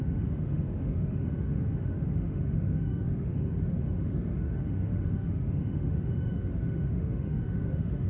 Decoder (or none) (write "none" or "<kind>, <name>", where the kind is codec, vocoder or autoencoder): autoencoder, DAC-VAE